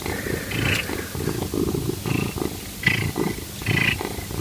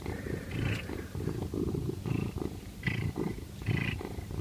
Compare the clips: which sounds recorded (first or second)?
first